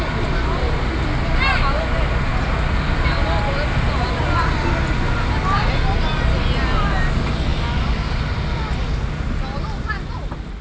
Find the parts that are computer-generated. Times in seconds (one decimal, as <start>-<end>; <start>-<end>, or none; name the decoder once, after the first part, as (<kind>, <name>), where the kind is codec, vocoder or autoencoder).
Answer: none